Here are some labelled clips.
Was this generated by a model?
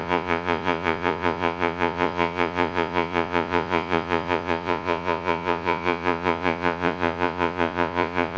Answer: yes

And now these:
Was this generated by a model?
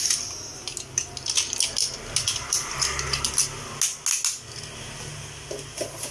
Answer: no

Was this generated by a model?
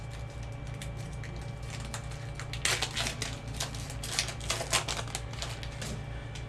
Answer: no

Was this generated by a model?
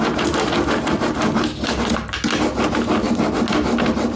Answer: no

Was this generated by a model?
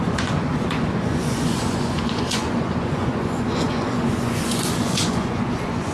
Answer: yes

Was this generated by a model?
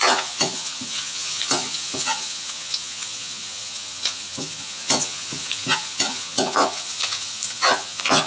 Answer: yes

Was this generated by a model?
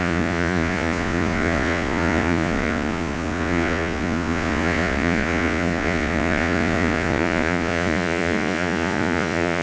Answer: yes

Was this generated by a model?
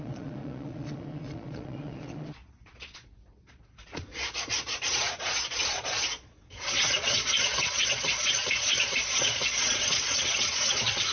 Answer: yes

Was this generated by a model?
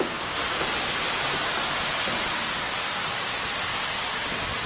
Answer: no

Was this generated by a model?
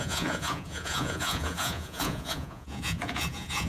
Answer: yes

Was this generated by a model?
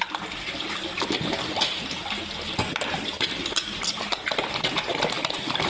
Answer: no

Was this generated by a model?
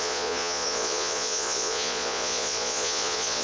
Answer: yes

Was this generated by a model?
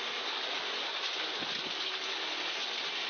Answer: no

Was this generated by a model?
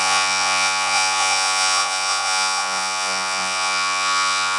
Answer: yes